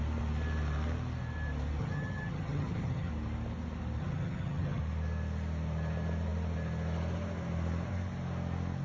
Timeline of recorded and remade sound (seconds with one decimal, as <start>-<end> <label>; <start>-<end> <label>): 0.0-1.8 recorded; 1.8-3.1 remade; 3.1-4.0 recorded; 4.0-4.8 remade; 4.8-8.8 recorded